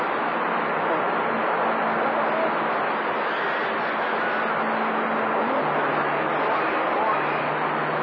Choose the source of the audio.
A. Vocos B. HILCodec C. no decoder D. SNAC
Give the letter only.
C